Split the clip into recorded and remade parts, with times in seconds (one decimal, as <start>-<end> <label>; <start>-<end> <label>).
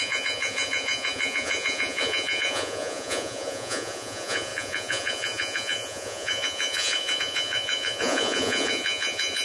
0.0-9.4 remade